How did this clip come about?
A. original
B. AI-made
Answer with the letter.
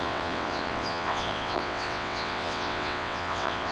B